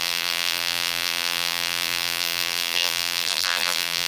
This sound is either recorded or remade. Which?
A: remade